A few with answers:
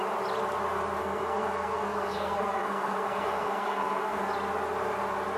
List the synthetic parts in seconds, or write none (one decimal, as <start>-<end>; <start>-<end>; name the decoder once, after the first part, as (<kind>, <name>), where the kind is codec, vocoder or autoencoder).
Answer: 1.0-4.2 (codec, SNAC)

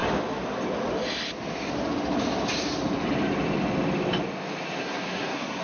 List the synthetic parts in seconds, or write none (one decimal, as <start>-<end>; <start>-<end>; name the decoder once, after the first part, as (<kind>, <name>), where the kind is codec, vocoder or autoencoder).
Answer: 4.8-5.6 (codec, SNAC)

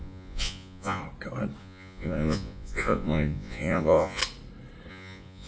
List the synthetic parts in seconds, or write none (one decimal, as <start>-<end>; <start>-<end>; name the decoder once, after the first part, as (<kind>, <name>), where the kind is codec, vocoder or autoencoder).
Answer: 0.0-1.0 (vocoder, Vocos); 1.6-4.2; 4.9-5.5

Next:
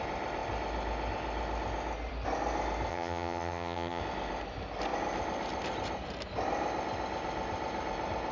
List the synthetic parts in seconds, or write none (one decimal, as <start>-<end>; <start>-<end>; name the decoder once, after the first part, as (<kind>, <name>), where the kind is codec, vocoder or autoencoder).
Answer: 2.9-4.0 (vocoder, HiFi-GAN)

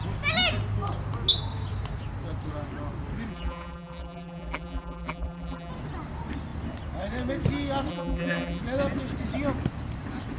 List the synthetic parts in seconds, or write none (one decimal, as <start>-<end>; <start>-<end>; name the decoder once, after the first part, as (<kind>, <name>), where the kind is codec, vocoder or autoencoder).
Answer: 3.3-5.7 (vocoder, BigVGAN v2); 7.9-8.6